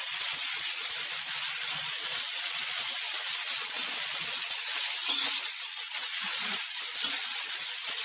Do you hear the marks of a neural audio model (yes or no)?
yes